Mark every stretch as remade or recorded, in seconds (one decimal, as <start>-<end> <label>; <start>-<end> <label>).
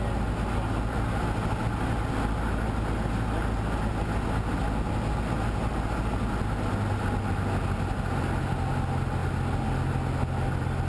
0.0-10.9 recorded